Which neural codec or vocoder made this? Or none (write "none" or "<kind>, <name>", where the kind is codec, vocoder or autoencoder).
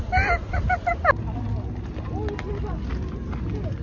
none